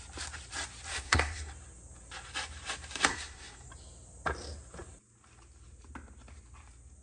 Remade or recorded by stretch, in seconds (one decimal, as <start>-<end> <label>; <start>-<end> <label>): 0.0-0.9 recorded; 0.9-1.5 remade; 1.5-3.1 recorded; 3.1-3.7 remade; 3.7-7.0 recorded